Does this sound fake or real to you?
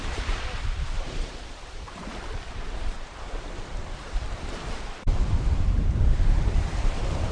fake